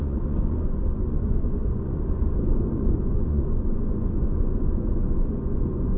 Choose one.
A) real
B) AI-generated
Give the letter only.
B